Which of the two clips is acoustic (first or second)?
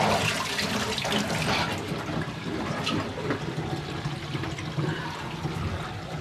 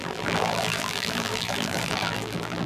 first